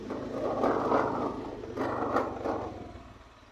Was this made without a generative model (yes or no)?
yes